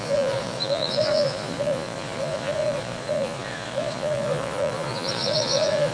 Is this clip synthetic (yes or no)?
yes